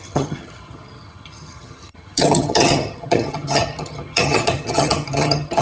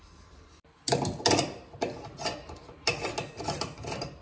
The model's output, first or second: first